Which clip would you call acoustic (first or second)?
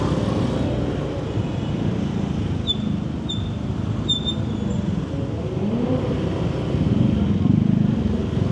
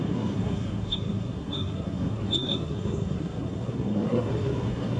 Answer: first